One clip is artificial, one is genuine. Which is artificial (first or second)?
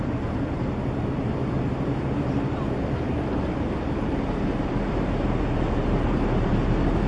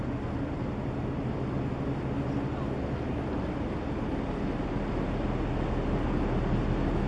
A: first